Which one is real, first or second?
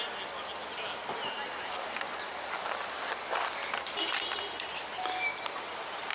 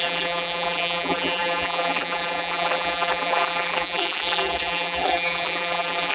first